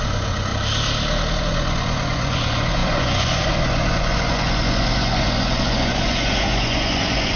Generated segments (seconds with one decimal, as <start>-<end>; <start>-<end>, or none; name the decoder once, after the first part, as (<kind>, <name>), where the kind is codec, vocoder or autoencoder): 0.0-0.5 (vocoder, Vocos); 1.4-7.4